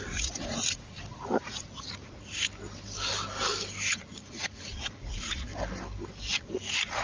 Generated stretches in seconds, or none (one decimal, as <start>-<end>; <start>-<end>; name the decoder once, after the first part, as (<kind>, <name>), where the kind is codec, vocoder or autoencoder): 0.0-2.5 (vocoder, Vocos); 3.9-5.5; 6.3-7.0